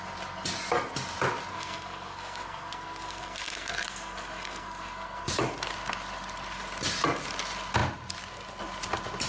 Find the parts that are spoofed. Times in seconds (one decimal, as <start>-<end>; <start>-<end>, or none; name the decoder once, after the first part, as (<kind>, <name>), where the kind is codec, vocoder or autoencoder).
1.5-5.3 (codec, SNAC)